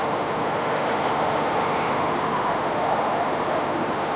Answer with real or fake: fake